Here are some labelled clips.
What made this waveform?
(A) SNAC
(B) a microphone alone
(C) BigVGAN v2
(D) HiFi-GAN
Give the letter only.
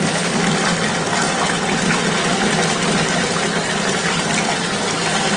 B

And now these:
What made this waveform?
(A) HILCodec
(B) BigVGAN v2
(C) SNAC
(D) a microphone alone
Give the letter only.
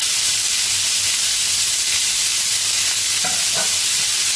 D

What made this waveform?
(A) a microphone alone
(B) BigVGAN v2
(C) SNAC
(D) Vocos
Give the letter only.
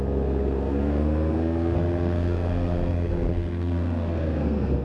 C